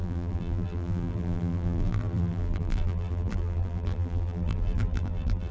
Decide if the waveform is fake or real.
fake